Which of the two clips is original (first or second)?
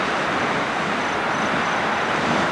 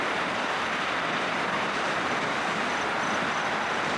first